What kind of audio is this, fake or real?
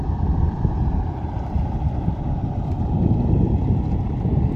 real